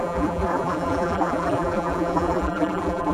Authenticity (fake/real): fake